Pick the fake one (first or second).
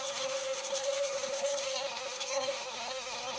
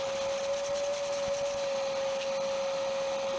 first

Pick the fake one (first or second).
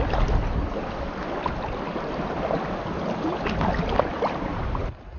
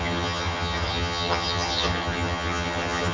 second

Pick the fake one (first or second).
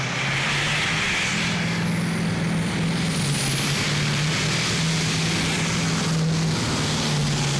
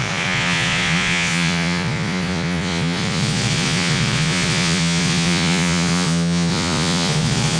second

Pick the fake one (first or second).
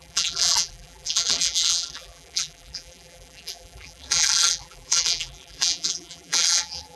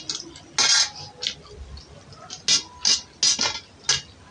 first